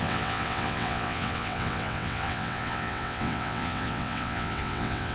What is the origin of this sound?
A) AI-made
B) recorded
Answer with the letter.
A